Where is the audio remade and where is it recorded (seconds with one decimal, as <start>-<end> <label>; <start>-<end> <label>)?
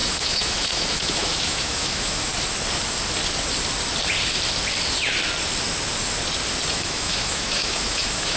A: 0.0-2.3 remade; 2.3-6.7 recorded; 6.7-8.4 remade